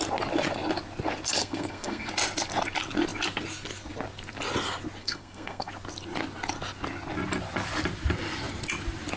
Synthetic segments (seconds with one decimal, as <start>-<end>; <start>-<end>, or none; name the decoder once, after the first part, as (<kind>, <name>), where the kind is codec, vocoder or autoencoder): 1.4-2.1 (codec, SNAC); 5.0-5.7